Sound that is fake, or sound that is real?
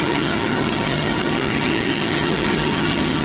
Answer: fake